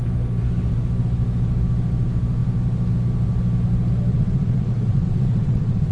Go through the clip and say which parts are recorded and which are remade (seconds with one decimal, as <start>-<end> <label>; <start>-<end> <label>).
0.0-4.1 recorded; 4.1-5.9 remade